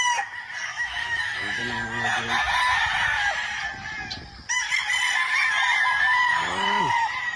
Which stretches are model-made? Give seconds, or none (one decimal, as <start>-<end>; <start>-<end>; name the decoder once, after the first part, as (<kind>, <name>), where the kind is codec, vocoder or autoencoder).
0.7-1.6 (autoencoder, DAC-VAE)